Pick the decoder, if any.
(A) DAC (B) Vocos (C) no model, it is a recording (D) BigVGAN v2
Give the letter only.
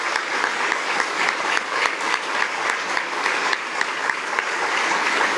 A